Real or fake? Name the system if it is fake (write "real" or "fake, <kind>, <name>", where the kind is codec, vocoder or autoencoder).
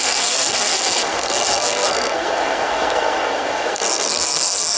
fake, codec, SNAC